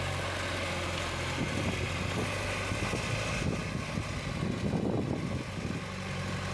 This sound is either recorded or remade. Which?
recorded